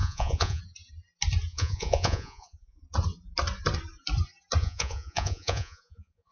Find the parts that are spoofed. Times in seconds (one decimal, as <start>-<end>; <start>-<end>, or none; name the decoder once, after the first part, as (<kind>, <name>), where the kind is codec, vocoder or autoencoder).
0.0-0.6 (vocoder, Vocos); 1.5-2.8; 4.6-6.3